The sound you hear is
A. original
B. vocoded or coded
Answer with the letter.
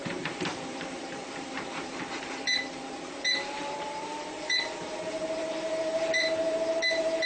B